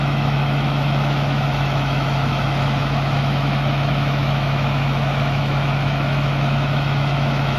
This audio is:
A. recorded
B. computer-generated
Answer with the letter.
B